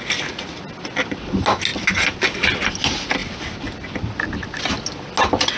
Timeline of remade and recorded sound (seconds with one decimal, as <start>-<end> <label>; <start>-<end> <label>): 0.0-5.6 recorded